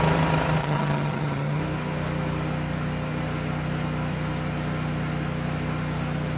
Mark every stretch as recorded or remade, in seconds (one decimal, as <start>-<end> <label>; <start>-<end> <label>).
0.0-0.6 recorded; 0.6-1.6 remade; 1.6-6.4 recorded